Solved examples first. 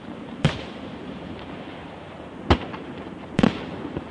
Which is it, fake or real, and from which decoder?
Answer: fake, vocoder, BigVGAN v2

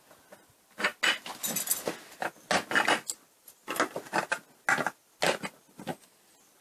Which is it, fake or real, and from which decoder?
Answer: real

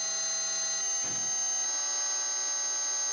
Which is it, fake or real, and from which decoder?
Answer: real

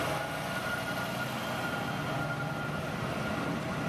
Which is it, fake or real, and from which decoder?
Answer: real